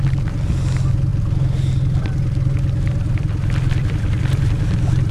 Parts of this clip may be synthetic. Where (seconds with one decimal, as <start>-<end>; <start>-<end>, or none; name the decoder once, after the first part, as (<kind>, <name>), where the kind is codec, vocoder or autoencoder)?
none